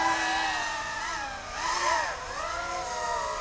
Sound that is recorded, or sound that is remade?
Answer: recorded